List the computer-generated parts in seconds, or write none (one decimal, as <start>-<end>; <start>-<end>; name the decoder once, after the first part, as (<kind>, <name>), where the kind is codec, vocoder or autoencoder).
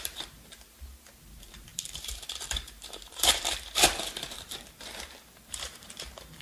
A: 0.0-6.4 (vocoder, BigVGAN v2)